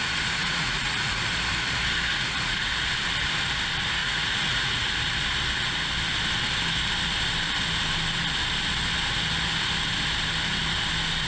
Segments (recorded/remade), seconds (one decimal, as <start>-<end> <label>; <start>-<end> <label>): 0.0-0.4 recorded; 0.4-1.2 remade; 1.2-2.1 recorded; 2.1-2.7 remade; 2.7-4.0 recorded; 4.0-4.9 remade; 4.9-11.3 recorded